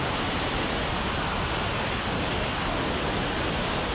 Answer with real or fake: real